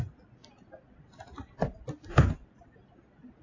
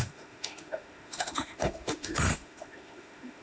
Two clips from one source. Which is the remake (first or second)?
second